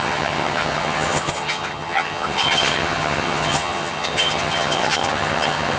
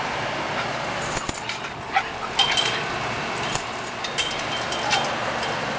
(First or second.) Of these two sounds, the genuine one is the second